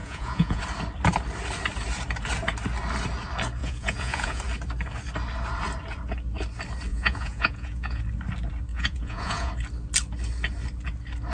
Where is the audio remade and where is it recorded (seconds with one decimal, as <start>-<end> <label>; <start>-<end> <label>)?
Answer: 0.0-0.6 remade; 0.6-3.6 recorded; 3.6-4.4 remade; 4.4-6.9 recorded; 6.9-8.0 remade; 8.0-8.7 recorded; 8.7-9.5 remade; 9.5-11.3 recorded